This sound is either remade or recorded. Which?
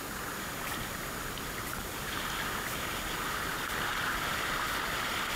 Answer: recorded